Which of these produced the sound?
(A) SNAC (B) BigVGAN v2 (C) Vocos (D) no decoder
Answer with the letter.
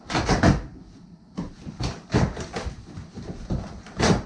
B